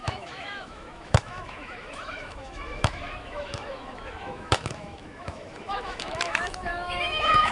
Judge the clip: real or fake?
fake